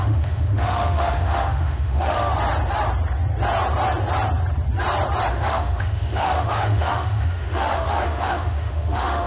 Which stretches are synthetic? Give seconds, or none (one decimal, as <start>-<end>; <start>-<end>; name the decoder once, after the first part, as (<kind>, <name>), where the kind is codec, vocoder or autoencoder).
0.0-2.3 (autoencoder, DAC-VAE); 5.3-9.3